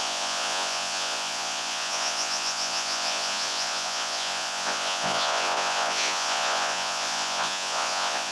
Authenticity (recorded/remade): remade